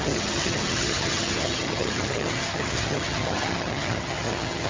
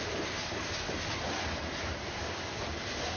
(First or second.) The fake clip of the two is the first